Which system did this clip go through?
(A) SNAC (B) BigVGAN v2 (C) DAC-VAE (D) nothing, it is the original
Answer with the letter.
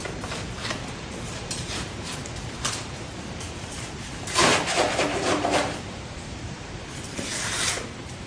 B